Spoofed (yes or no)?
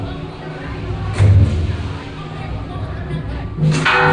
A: no